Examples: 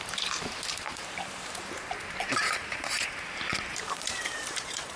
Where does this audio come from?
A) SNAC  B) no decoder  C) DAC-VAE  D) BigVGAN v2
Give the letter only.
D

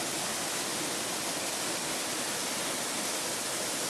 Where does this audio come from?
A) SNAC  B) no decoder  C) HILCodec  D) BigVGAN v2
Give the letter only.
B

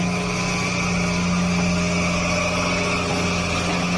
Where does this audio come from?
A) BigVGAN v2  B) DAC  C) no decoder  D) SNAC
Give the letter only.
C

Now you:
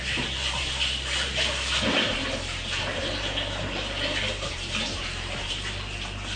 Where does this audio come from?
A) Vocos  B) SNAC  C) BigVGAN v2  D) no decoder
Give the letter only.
C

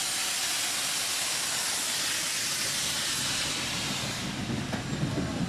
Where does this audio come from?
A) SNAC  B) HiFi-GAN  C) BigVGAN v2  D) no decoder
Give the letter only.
D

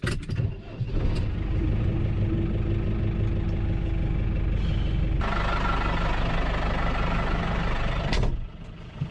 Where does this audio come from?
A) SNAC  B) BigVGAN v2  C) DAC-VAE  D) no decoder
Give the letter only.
D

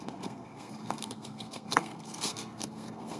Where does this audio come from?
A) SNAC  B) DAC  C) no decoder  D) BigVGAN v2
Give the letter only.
A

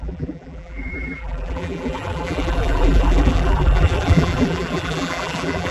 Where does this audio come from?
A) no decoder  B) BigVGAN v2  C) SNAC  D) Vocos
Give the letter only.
B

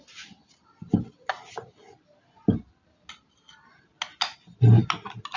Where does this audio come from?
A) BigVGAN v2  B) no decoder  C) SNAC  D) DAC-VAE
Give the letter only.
B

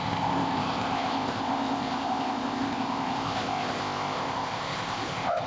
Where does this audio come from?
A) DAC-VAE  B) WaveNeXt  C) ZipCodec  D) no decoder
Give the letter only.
C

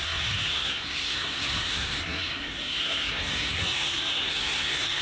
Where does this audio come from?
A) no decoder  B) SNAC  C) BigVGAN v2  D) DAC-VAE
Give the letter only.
B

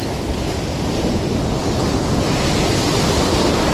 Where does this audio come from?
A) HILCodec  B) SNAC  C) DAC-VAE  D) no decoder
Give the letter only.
D